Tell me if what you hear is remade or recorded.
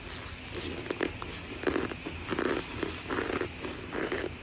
recorded